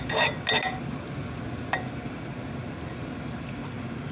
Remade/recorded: recorded